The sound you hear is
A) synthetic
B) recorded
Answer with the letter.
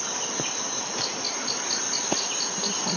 B